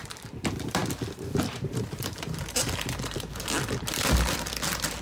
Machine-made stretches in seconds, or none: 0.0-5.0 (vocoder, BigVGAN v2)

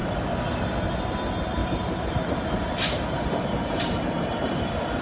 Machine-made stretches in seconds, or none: 1.6-4.6 (vocoder, BigVGAN v2)

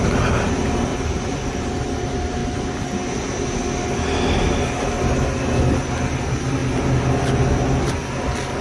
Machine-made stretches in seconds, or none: 0.9-2.0 (vocoder, BigVGAN v2)